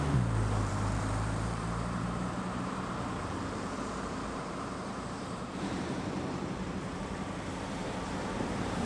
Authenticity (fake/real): fake